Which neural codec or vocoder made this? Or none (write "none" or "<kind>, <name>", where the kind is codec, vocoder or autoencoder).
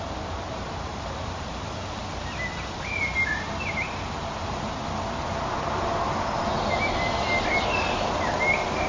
none